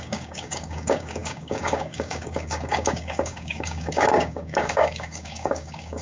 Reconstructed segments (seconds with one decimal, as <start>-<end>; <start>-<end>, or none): 0.0-6.0